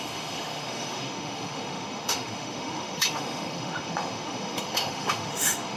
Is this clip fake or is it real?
fake